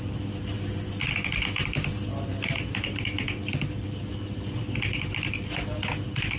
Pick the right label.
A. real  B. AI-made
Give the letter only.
A